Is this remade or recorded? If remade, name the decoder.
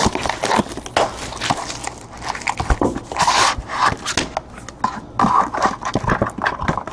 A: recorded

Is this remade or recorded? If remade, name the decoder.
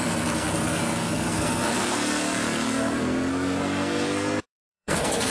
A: remade, codec, SNAC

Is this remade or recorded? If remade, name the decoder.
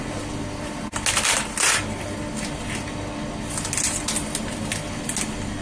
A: recorded